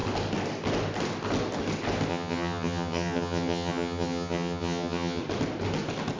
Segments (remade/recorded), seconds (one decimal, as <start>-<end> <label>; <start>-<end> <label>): 0.0-2.1 recorded; 2.1-5.2 remade; 5.2-6.2 recorded